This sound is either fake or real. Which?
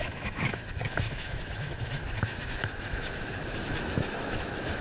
fake